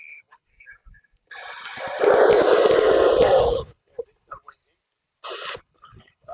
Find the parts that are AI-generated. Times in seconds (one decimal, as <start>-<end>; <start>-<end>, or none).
0.0-0.5; 3.4-4.6; 5.5-6.3